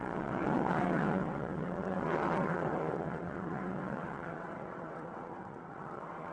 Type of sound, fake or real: fake